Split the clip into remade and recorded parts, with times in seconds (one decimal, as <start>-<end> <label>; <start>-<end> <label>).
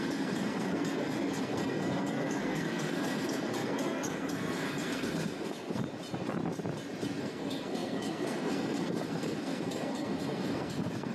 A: 0.0-5.8 remade; 5.8-7.2 recorded; 7.2-11.1 remade